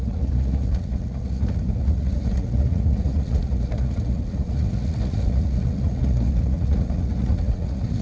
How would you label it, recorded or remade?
remade